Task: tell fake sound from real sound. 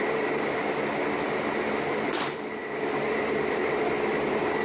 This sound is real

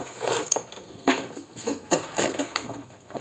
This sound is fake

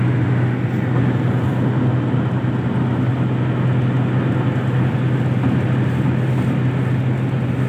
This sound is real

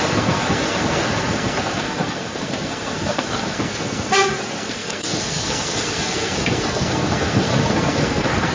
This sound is fake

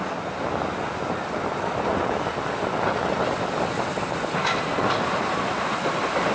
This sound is real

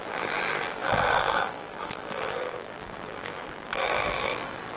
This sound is fake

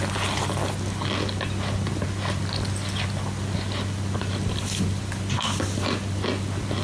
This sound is real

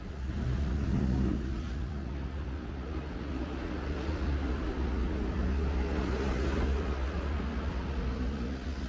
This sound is fake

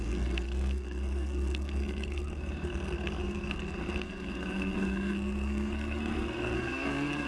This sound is fake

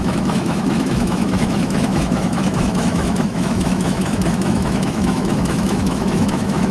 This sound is fake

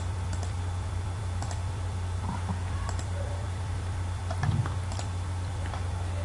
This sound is fake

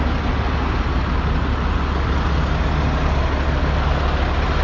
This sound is real